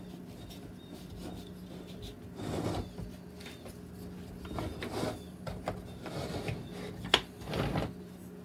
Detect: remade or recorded recorded